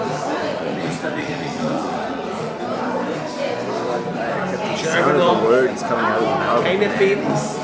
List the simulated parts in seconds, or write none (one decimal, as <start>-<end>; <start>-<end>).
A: 0.5-2.6